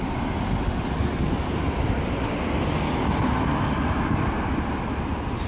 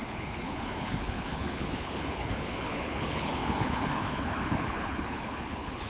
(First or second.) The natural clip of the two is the first